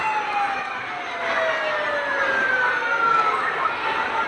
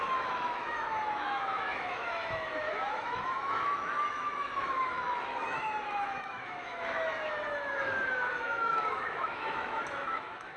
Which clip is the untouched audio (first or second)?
first